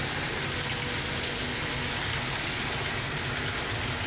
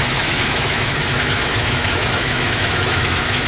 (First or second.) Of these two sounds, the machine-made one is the second